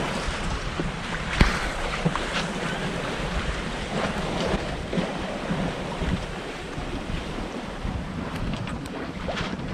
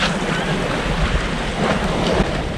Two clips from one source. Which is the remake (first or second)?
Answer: first